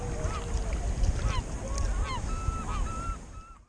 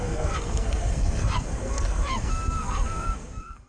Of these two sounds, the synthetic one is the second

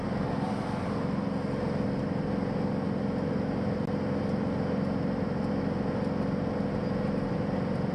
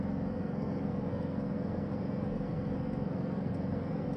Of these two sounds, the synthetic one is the second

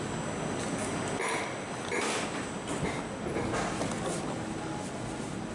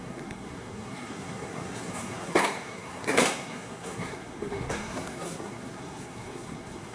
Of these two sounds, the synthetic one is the second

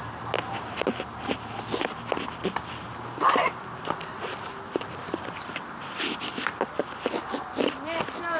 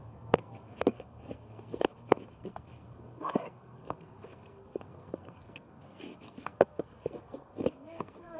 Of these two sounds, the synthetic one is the second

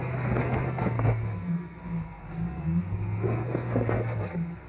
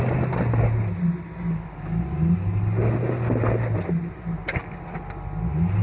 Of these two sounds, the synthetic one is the first